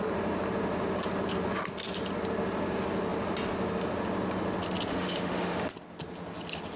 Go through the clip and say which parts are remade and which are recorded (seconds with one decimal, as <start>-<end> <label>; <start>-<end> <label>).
0.0-4.9 recorded; 4.9-5.7 remade; 5.7-6.8 recorded